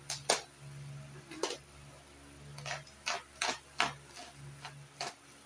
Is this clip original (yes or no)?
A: yes